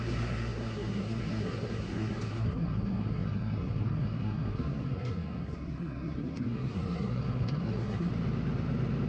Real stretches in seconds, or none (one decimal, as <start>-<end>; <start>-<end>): 8.1-9.1

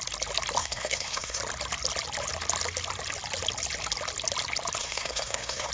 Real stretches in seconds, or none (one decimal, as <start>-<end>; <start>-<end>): 0.0-0.6; 1.4-4.8

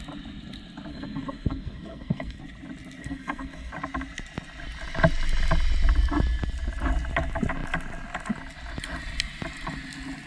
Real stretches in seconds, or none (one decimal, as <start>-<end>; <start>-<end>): 0.0-0.9; 2.4-3.0; 3.7-10.3